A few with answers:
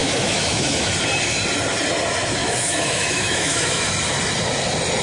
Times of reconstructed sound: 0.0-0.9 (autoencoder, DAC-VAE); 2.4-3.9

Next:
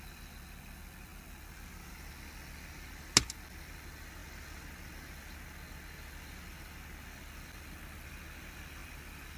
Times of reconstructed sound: none